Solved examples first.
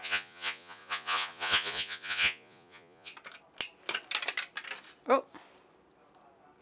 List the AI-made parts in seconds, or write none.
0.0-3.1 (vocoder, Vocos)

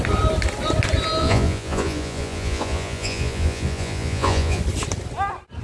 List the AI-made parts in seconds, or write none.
1.2-4.6 (vocoder, Vocos)

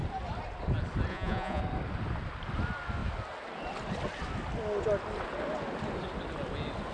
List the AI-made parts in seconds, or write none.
1.1-1.6 (vocoder, Vocos)

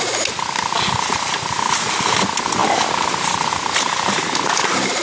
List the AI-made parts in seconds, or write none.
none

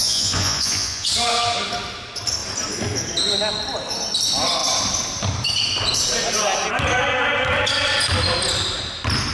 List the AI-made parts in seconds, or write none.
0.0-1.1 (vocoder, Vocos)

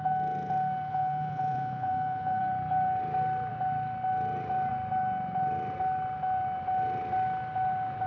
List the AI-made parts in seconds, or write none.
0.9-2.4 (vocoder, Vocos)

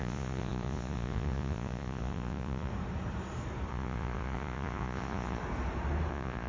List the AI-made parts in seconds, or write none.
0.0-2.7 (vocoder, Vocos); 3.7-5.4; 6.1-6.5

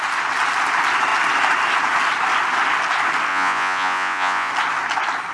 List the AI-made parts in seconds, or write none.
3.3-4.5 (vocoder, Vocos)